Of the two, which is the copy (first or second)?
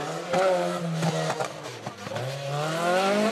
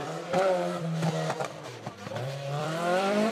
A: second